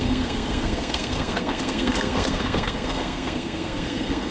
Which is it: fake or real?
fake